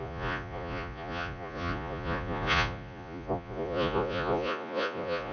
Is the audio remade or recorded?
remade